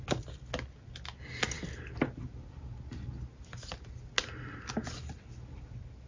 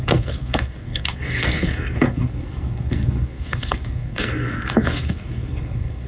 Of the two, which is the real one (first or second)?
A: first